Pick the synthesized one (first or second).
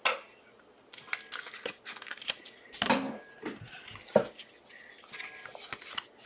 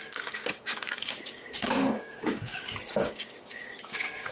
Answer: second